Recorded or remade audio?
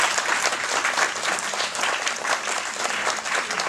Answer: recorded